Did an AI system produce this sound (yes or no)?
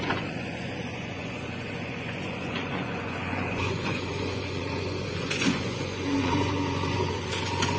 yes